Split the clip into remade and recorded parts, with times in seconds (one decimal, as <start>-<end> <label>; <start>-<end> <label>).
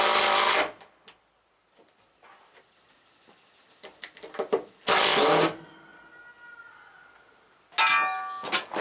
0.0-8.8 recorded